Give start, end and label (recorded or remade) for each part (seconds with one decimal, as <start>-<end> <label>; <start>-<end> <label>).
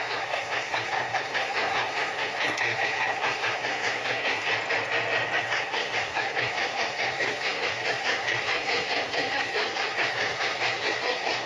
0.0-4.5 remade; 4.5-5.4 recorded; 5.4-11.5 remade